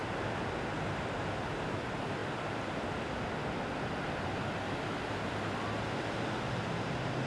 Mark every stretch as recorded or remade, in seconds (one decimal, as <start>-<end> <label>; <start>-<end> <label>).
0.0-1.5 recorded; 1.5-2.2 remade; 2.2-6.6 recorded; 6.6-7.3 remade